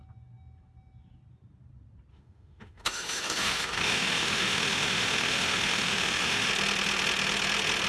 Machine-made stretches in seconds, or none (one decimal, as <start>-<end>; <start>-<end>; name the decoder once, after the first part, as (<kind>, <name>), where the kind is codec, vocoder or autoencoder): 2.1-6.5 (autoencoder, DAC-VAE)